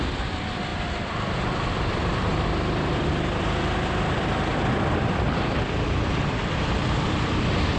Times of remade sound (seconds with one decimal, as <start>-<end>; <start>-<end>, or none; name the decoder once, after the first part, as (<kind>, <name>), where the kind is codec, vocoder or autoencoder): 0.0-0.7 (vocoder, BigVGAN v2); 1.7-7.8